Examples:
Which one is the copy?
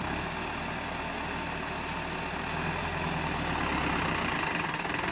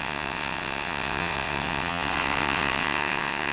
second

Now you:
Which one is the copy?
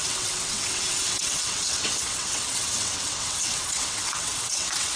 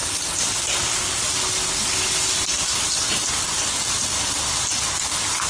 first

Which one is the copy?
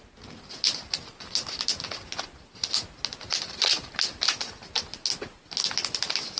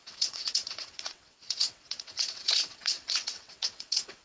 second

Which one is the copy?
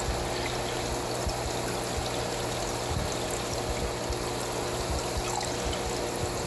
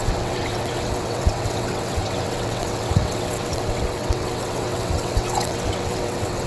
second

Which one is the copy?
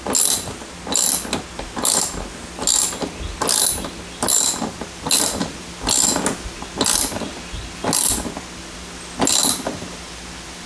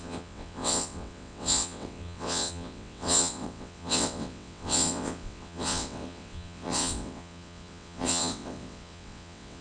second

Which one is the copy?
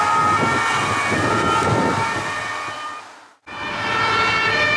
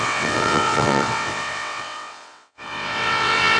second